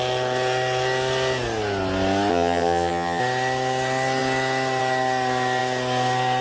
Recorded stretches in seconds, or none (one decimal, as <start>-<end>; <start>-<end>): 0.0-2.3; 3.2-6.4